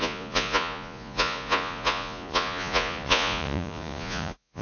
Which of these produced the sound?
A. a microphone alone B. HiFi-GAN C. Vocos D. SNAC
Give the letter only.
C